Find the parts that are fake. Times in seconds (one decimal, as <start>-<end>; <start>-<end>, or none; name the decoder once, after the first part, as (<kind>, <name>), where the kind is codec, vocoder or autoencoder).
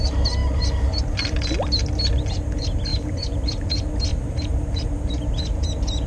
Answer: 2.9-3.5 (vocoder, BigVGAN v2); 4.1-5.2